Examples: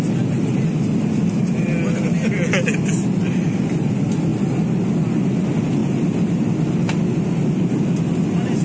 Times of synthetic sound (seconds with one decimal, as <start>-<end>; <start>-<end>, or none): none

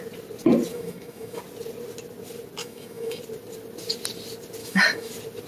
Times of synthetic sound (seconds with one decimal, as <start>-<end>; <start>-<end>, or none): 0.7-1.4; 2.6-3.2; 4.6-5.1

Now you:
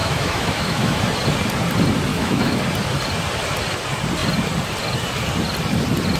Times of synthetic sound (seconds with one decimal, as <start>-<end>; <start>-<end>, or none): 0.0-1.0; 2.1-2.6

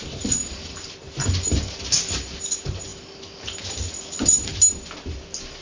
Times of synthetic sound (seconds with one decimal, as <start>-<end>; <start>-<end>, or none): none

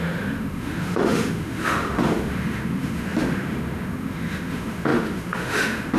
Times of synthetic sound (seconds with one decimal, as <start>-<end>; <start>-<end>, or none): 0.0-6.0